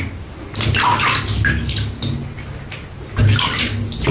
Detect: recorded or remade recorded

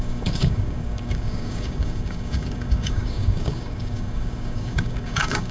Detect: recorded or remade remade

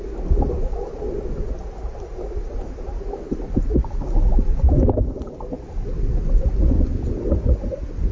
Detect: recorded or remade recorded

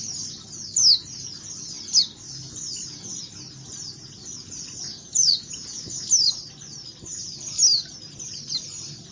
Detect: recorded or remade recorded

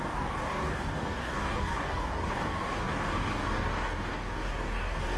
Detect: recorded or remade remade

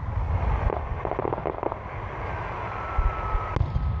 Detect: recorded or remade recorded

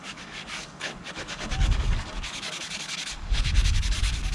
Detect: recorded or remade remade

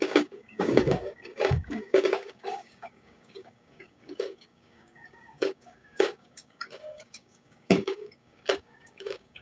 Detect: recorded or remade remade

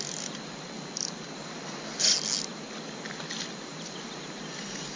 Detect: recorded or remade recorded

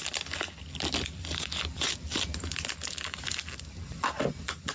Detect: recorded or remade recorded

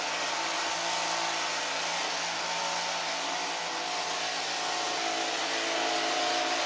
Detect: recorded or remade recorded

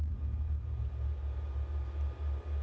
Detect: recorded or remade recorded